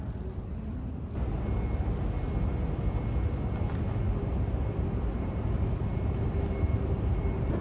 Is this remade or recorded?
recorded